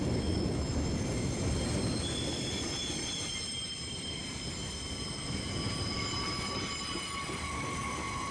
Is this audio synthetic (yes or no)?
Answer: no